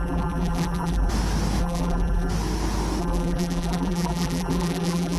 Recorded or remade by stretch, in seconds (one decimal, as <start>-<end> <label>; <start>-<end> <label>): 0.0-1.1 remade; 1.1-1.6 recorded; 1.6-2.3 remade; 2.3-3.0 recorded; 3.0-5.2 remade